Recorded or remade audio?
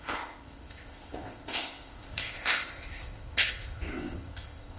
remade